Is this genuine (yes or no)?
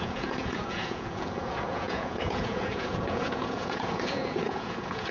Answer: no